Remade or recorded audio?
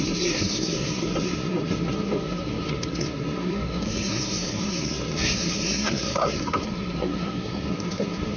remade